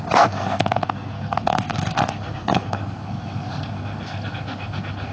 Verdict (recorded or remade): remade